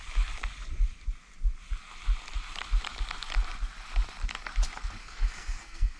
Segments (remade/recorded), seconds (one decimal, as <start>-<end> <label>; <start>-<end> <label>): 0.0-5.0 recorded; 5.0-6.0 remade